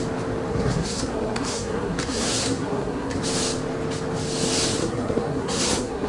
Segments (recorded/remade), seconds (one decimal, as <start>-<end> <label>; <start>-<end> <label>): 0.0-0.5 recorded; 0.5-3.2 remade; 3.2-4.8 recorded; 4.8-6.1 remade